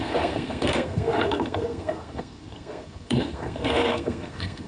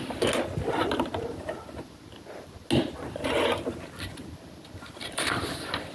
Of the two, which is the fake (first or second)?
first